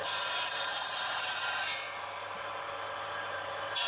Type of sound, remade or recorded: remade